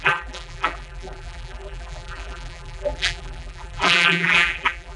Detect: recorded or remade remade